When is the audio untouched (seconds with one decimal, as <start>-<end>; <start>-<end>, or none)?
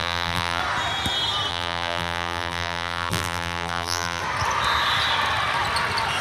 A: 0.6-1.5; 4.2-6.2